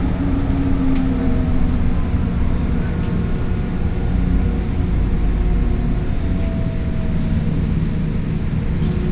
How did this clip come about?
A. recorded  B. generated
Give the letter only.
A